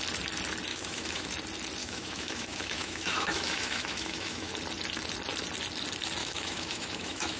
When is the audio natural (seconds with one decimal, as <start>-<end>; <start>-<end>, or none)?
0.0-0.7; 1.3-1.8; 4.5-6.2